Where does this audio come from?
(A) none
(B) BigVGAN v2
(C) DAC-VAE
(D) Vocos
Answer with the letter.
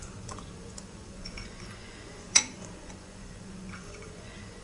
D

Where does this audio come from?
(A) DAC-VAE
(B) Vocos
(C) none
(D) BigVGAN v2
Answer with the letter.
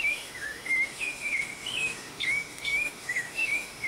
A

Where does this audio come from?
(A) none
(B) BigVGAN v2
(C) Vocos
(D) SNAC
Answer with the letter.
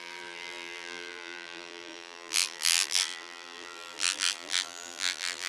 B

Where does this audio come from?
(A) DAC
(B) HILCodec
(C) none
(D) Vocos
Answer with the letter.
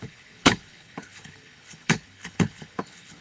B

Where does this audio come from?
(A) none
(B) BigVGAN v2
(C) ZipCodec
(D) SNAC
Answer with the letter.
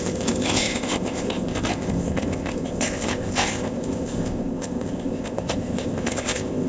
C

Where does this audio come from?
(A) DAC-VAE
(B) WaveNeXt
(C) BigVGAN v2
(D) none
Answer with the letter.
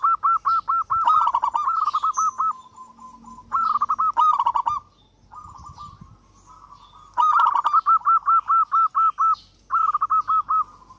D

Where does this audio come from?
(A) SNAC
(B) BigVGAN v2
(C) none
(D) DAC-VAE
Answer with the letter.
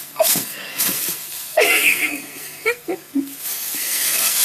A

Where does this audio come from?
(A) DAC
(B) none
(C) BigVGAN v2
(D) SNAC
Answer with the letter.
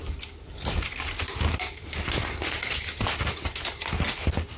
B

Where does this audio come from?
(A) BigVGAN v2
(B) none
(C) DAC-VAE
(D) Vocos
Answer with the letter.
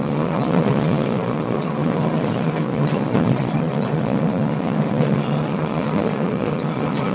D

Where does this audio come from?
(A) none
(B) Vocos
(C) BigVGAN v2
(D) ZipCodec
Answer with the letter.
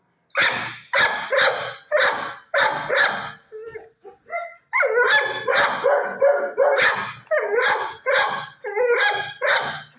A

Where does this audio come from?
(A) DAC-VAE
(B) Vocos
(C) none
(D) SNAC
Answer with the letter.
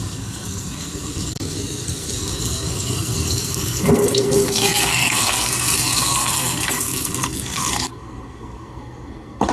D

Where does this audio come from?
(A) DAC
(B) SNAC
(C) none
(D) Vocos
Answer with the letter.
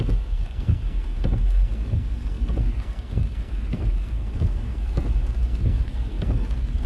B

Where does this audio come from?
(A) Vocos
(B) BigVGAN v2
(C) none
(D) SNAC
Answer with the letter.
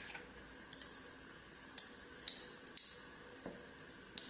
C